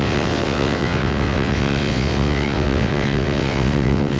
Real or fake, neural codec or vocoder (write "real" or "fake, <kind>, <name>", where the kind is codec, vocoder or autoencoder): fake, vocoder, WaveNeXt